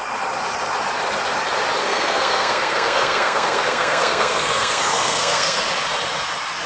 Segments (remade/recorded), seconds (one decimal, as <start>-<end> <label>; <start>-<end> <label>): 0.0-1.8 recorded; 1.8-5.6 remade; 5.6-6.7 recorded